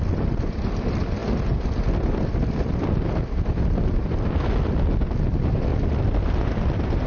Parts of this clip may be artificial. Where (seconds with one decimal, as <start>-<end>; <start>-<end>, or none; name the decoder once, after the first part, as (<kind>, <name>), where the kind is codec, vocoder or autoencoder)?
none